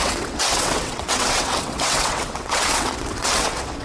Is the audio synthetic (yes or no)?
yes